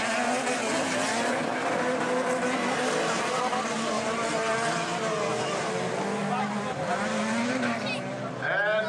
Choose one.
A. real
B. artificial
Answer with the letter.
A